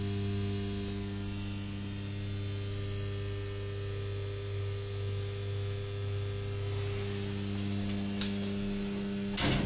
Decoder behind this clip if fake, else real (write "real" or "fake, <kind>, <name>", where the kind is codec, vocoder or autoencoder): real